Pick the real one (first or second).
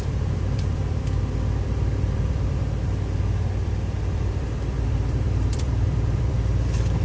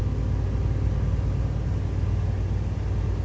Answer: second